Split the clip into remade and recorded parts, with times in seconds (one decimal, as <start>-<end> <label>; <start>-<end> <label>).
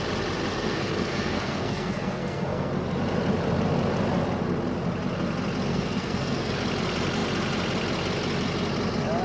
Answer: 0.0-0.5 recorded; 0.5-2.7 remade; 2.7-5.7 recorded; 5.7-6.5 remade; 6.5-9.2 recorded